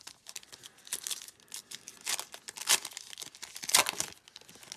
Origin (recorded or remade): recorded